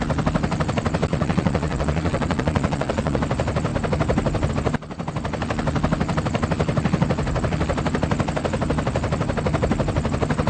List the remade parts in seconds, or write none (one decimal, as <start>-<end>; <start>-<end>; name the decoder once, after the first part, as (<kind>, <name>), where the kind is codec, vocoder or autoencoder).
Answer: 1.1-3.2 (vocoder, Vocos)